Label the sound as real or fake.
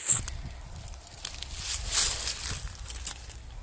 real